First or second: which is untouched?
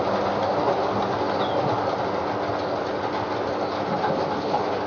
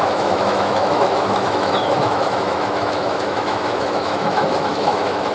first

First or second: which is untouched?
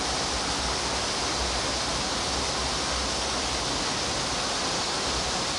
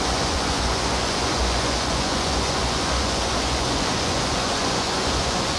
first